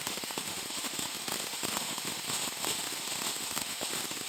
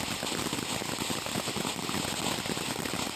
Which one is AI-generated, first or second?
first